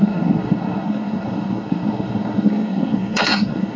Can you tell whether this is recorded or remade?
remade